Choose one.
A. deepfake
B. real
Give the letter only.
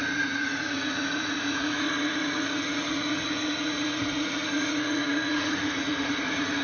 A